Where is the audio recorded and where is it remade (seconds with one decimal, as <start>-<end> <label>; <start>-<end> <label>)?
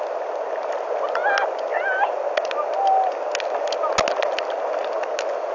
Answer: 0.0-5.5 recorded